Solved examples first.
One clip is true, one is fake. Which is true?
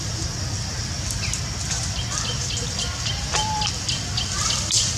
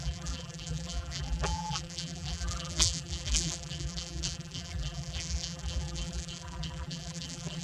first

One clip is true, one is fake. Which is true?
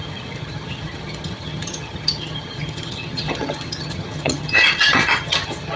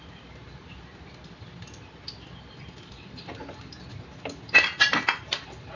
second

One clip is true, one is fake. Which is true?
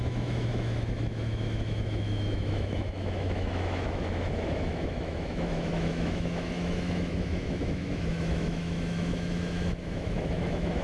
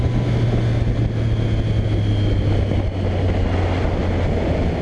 second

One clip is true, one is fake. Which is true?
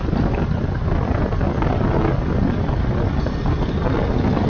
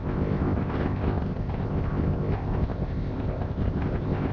first